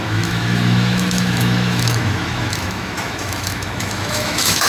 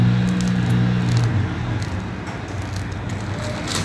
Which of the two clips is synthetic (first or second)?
first